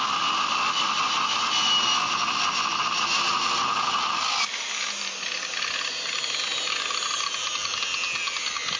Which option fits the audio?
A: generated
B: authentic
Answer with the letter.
B